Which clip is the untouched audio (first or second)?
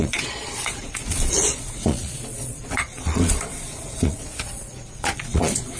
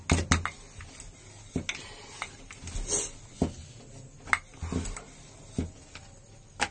second